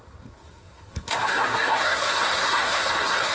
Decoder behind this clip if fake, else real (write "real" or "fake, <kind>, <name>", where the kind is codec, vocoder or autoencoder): fake, codec, SNAC